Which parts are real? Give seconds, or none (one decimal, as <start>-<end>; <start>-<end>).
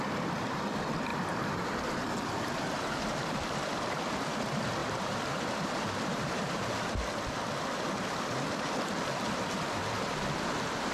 0.0-1.1; 1.7-4.8; 6.9-10.9